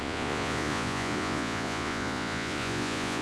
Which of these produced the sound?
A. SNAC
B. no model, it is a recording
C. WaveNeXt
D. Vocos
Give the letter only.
D